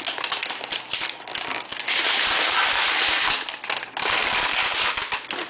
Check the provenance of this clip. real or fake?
real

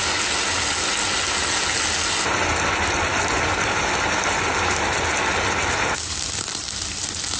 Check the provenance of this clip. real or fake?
real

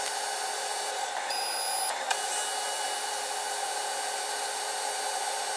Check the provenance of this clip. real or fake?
real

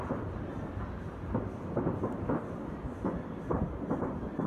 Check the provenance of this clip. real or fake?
real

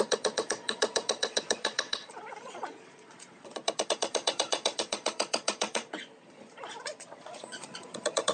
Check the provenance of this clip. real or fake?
fake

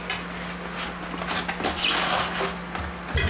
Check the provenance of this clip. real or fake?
real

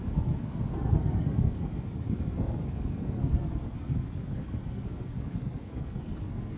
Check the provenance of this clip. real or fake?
fake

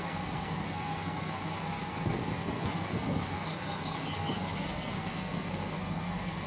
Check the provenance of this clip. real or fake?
fake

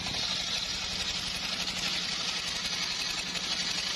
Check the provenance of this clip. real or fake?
real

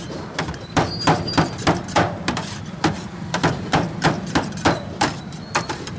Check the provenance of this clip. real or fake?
fake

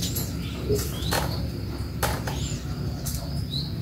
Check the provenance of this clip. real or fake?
real